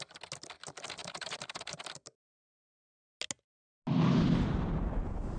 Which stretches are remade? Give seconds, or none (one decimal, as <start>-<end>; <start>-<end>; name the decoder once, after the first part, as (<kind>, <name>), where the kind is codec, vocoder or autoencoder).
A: 1.0-1.8 (vocoder, BigVGAN v2)